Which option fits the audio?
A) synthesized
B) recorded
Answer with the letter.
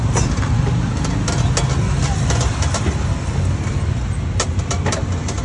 B